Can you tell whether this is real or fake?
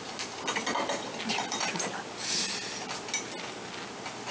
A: real